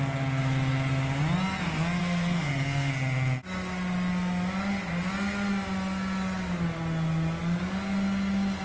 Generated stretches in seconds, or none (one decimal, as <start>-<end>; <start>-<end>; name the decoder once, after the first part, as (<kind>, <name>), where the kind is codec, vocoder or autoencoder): 2.0-2.9 (codec, SNAC)